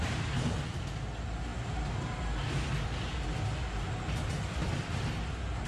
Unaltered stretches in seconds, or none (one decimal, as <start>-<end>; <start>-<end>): 0.0-5.7